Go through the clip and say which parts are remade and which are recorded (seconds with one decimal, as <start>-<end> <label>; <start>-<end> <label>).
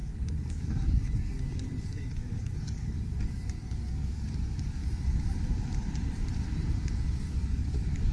0.0-4.8 remade; 4.8-7.2 recorded; 7.2-8.1 remade